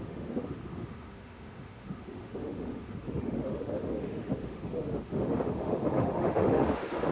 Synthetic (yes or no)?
yes